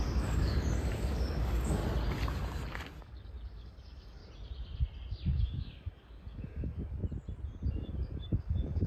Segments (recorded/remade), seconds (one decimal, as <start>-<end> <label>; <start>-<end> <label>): 0.0-1.8 remade; 1.8-3.0 recorded; 3.0-4.2 remade; 4.2-5.4 recorded; 5.4-7.0 remade; 7.0-7.7 recorded; 7.7-8.9 remade